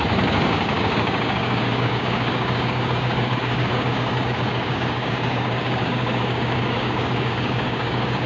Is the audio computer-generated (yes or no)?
yes